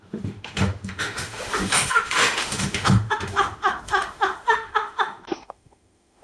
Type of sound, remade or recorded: remade